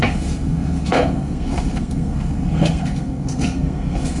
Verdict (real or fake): fake